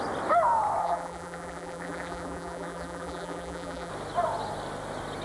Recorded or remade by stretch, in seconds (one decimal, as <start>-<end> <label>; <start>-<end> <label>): 0.0-0.8 recorded; 0.8-3.9 remade; 3.9-5.2 recorded